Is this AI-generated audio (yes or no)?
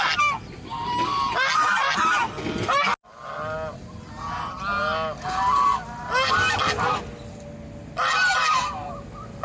no